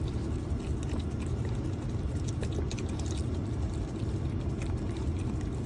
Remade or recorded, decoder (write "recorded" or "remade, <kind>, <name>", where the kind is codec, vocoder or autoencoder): recorded